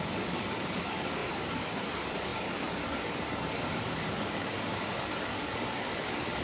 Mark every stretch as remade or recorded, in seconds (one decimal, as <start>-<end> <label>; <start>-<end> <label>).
0.0-6.4 remade